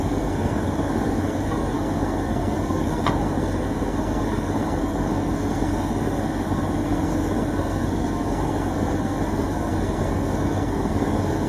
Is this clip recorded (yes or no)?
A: no